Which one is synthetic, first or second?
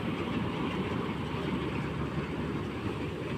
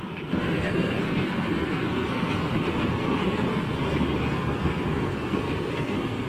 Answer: second